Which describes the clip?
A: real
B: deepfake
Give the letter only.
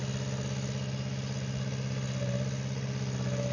A